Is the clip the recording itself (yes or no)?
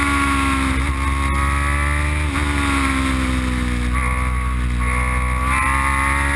yes